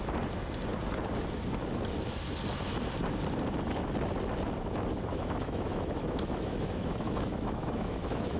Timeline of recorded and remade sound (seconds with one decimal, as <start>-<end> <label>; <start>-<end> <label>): 0.0-5.1 recorded; 5.1-8.4 remade